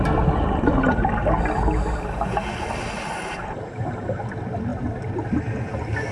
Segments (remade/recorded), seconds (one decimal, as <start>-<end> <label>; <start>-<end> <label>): 0.0-6.1 recorded